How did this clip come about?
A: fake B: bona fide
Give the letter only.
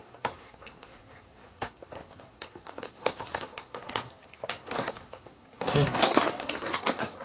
A